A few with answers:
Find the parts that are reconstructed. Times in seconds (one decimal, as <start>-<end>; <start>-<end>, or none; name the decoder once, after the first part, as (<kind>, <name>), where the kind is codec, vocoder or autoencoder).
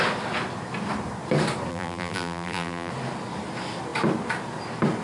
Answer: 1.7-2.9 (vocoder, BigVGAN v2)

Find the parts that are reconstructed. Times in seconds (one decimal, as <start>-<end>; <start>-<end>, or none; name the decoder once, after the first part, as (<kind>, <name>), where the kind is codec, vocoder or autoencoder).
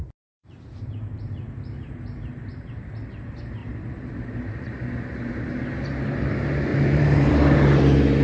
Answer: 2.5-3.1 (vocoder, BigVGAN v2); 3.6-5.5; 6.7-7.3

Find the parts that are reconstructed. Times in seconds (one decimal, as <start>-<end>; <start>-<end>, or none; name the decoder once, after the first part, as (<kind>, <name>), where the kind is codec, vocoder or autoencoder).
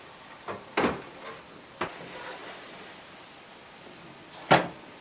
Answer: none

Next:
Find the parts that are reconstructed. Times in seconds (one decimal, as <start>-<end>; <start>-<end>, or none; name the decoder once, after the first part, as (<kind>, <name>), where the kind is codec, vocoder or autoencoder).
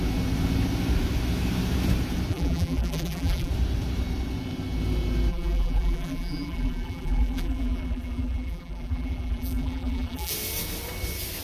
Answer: 2.3-3.5 (vocoder, BigVGAN v2); 5.3-10.3